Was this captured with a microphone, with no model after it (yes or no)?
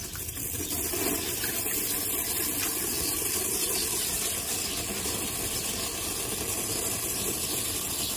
yes